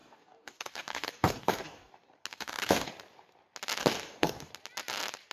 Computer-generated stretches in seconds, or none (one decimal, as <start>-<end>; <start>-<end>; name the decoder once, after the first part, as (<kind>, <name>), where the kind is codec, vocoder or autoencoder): 0.0-1.9 (codec, DAC); 2.3-2.9; 3.8-4.5